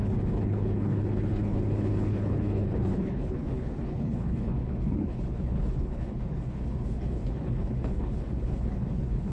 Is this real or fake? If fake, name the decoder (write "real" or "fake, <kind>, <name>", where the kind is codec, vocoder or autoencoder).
fake, codec, HILCodec